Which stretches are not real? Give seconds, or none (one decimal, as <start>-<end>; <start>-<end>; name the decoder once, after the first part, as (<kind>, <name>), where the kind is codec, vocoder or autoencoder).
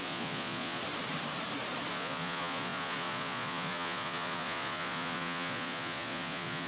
0.0-0.8 (vocoder, Vocos); 1.9-6.7